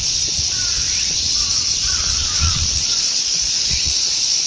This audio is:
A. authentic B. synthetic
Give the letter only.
B